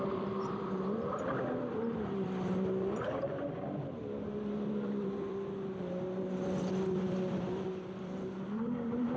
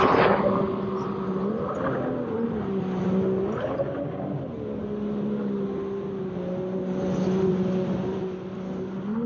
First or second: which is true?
second